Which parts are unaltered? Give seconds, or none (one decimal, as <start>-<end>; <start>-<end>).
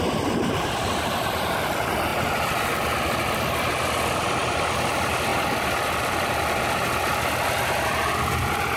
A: 0.0-8.8